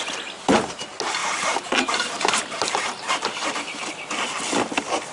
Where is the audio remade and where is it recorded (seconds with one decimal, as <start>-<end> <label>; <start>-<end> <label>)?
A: 0.0-1.2 recorded; 1.2-3.9 remade; 3.9-5.1 recorded